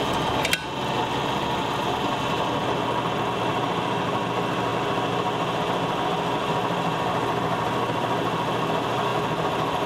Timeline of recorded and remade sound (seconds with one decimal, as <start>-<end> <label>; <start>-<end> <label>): 0.0-9.9 recorded